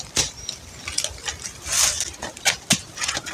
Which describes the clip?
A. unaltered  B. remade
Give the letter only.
A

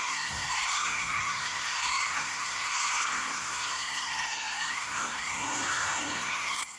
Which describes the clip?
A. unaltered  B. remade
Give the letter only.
B